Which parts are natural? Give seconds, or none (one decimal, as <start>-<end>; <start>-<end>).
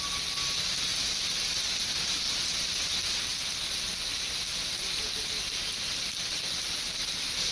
0.0-7.5